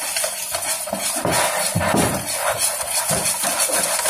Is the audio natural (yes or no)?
yes